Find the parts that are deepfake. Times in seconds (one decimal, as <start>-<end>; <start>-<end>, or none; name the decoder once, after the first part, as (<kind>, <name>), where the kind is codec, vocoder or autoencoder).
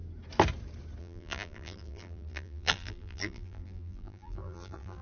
1.0-5.0 (vocoder, BigVGAN v2)